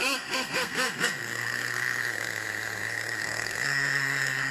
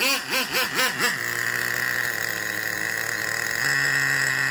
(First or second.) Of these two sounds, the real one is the second